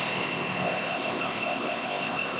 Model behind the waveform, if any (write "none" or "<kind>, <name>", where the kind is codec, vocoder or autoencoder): codec, ZipCodec